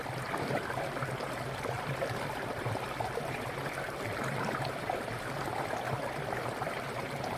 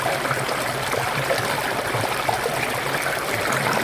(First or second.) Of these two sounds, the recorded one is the second